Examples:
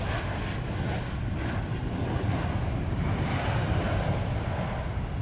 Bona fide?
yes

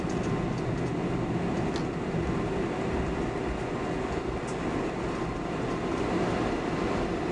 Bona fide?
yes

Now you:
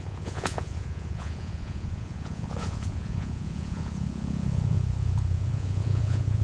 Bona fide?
no